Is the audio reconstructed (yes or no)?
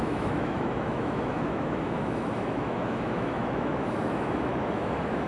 yes